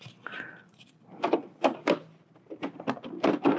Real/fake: real